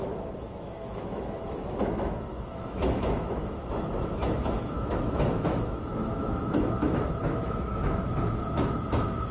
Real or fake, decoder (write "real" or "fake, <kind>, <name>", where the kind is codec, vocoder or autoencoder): fake, autoencoder, DAC-VAE